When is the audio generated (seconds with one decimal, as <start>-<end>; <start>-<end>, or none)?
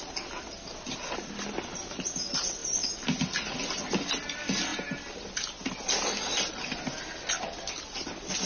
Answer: none